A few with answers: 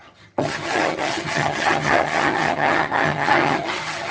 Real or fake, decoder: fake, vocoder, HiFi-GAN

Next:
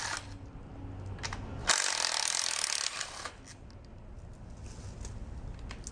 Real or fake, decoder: real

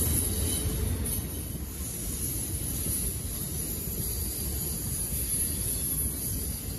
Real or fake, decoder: real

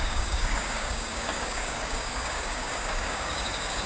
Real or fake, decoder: fake, codec, DAC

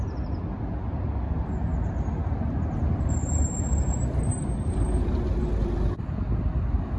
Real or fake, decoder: real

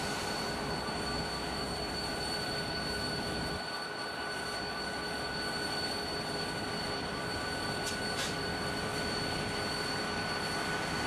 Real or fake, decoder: fake, vocoder, BigVGAN v2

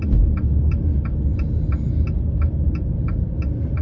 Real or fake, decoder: real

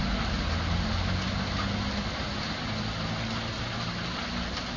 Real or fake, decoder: real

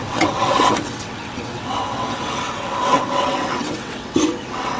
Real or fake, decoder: fake, vocoder, WaveNeXt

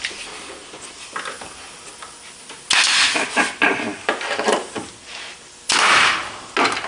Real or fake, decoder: real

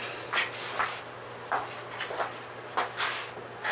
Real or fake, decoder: real